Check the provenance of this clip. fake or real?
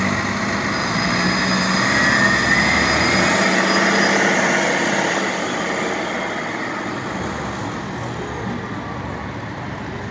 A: real